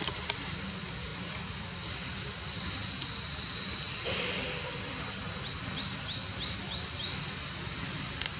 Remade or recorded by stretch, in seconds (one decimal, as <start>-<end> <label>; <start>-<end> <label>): 0.0-1.1 remade; 1.1-2.3 recorded; 2.3-6.2 remade; 6.2-6.9 recorded; 6.9-8.4 remade